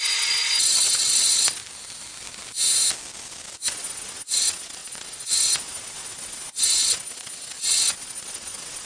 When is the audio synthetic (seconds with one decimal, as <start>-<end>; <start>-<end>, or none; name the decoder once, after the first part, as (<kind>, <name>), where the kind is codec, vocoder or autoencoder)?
0.0-1.6 (vocoder, WaveNeXt); 3.7-8.8